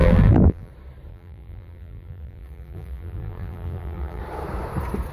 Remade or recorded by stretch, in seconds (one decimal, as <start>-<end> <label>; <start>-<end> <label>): 0.0-0.7 remade; 0.7-1.1 recorded; 1.1-4.2 remade; 4.2-5.1 recorded